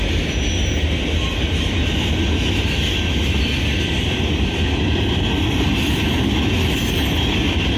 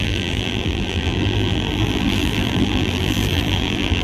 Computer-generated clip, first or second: second